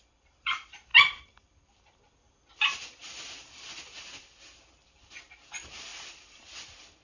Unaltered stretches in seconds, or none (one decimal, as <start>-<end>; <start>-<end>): 0.0-7.0

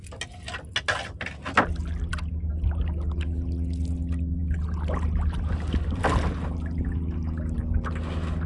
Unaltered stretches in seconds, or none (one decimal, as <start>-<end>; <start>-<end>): 0.0-8.5

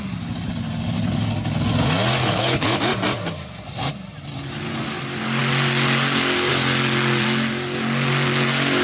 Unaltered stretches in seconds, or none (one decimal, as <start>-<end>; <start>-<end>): 0.0-2.2; 2.8-8.8

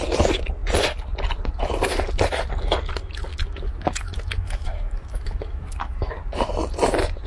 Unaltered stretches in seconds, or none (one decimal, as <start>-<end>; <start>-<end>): 0.0-3.3; 6.1-7.3

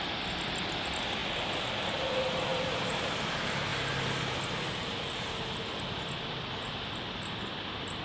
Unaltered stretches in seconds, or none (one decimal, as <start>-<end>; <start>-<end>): 0.0-2.5; 3.3-8.0

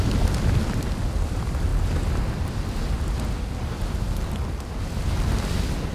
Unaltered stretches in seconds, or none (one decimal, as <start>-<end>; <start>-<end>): 0.0-5.9